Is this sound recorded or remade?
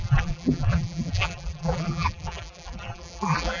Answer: remade